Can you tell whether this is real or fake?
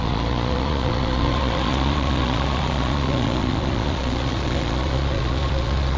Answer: fake